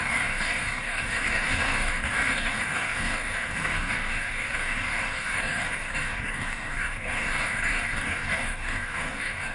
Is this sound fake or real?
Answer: fake